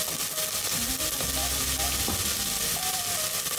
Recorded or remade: recorded